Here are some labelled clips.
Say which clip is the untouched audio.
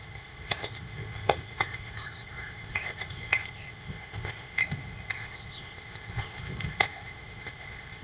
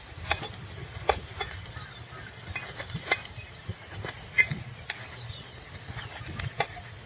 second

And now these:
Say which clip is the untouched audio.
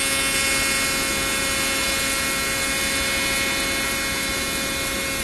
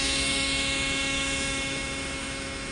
first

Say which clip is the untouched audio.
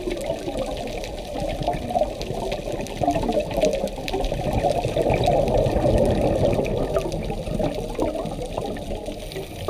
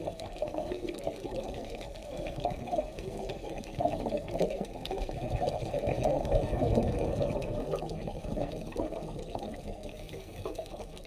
first